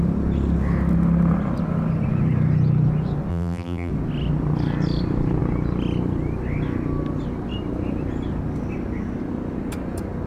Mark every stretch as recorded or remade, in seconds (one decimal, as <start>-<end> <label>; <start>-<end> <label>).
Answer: 0.0-3.3 recorded; 3.3-3.9 remade; 3.9-10.3 recorded